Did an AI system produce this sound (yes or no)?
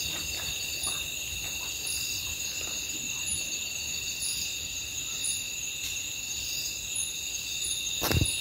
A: no